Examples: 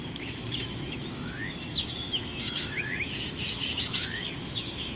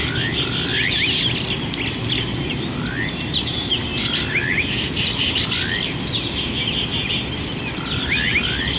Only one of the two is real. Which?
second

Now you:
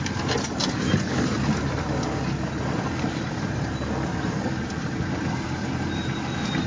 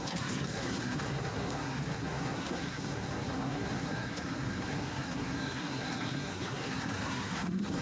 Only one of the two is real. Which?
first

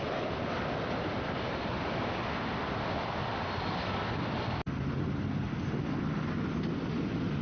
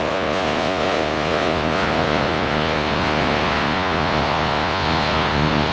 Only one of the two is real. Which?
first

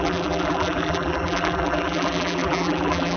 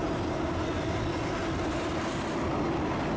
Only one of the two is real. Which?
second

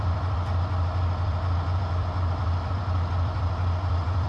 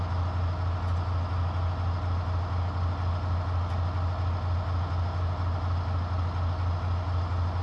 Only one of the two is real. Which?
second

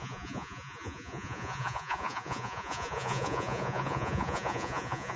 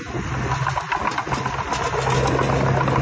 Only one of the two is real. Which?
second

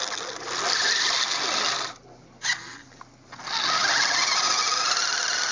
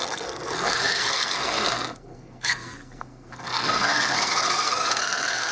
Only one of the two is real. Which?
first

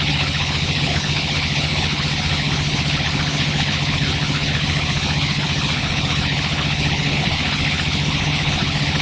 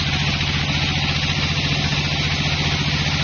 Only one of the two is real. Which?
second